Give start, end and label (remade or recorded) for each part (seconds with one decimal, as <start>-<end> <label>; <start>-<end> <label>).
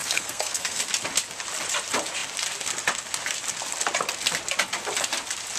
0.0-0.8 remade; 0.8-5.6 recorded